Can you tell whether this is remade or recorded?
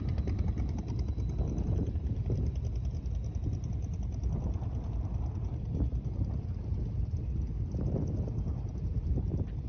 remade